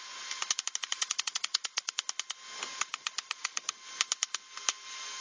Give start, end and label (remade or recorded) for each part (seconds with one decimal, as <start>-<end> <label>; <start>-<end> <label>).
0.0-1.0 recorded; 1.0-1.9 remade; 1.9-2.7 recorded; 2.7-3.8 remade; 3.8-5.2 recorded